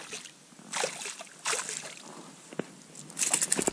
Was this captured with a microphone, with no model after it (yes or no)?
yes